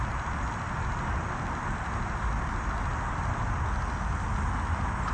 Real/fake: real